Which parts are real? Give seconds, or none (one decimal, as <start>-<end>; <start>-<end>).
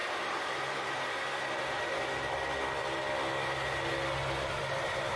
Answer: 2.0-5.2